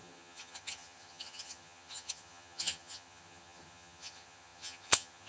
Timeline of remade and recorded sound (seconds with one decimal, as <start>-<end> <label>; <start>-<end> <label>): 0.0-5.3 remade